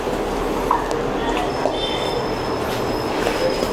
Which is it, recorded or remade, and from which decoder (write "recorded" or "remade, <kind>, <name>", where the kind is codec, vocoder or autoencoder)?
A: recorded